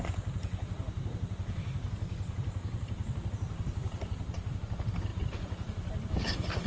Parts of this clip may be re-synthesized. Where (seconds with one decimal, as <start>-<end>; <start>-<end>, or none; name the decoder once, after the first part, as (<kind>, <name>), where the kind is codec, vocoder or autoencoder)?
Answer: none